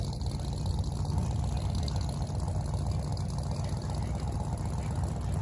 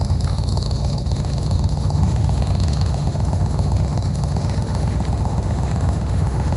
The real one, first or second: first